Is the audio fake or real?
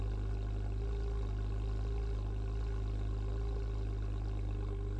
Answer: real